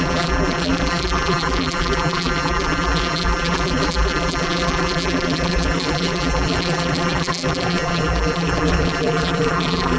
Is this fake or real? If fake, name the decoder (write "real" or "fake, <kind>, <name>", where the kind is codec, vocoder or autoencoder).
fake, vocoder, BigVGAN v2